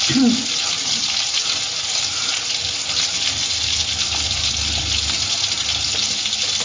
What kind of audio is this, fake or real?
real